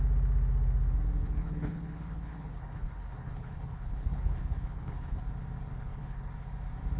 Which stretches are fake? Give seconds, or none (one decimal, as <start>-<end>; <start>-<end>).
1.2-5.2; 5.7-6.3